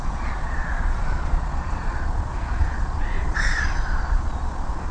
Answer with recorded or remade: remade